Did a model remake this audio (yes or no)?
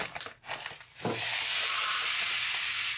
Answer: no